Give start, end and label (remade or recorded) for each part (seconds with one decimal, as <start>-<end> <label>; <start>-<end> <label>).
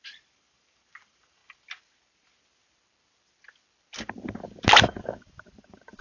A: 0.0-1.4 remade; 1.4-5.0 recorded; 5.0-6.0 remade